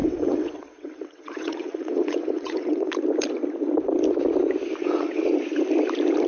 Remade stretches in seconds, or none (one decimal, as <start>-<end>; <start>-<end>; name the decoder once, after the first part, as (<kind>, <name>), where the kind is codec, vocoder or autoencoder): 0.0-2.9 (vocoder, WaveNeXt); 4.8-5.3